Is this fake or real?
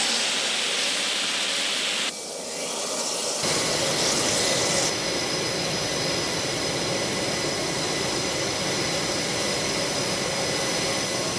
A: real